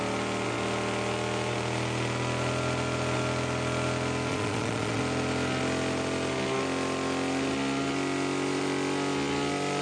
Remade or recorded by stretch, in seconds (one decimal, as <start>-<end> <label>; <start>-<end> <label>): 0.0-4.3 recorded; 4.3-5.0 remade; 5.0-9.8 recorded